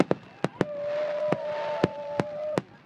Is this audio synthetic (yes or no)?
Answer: no